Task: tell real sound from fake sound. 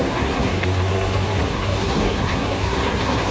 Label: fake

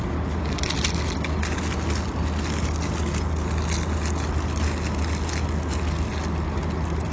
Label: real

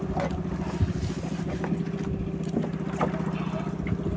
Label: real